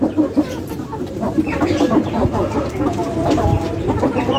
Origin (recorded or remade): remade